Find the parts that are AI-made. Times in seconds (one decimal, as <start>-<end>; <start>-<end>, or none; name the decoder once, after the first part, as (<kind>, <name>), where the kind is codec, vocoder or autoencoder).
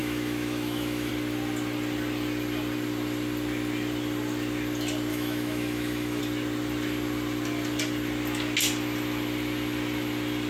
0.0-1.1 (autoencoder, DAC-VAE); 5.1-6.2